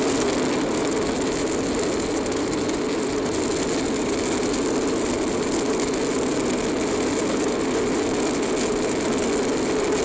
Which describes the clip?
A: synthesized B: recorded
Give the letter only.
B